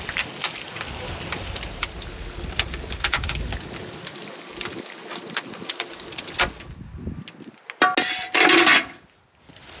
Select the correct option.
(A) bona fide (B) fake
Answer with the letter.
A